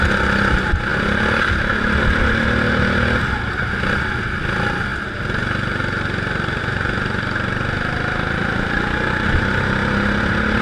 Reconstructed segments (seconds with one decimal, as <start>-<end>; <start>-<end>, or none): none

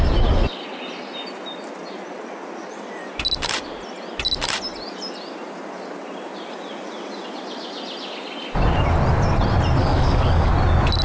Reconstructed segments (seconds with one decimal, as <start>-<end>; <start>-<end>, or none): 9.8-10.5

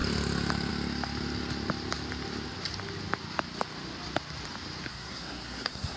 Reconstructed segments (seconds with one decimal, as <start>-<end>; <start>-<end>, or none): 4.9-6.0

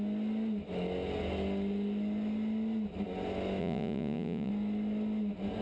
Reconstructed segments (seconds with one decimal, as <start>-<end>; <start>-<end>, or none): 3.6-4.5

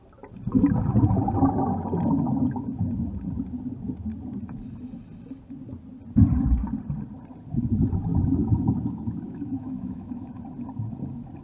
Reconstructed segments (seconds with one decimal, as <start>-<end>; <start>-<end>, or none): 8.1-10.4

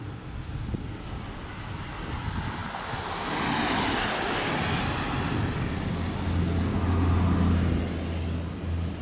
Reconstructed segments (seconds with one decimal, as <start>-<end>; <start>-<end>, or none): none

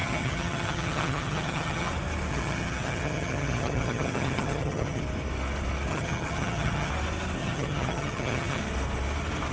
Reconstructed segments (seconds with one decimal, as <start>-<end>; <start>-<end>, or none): 0.0-1.9; 2.3-5.0; 5.9-6.9; 7.4-8.6

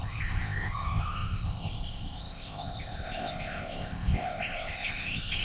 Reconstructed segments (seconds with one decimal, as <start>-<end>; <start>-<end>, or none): 0.0-5.4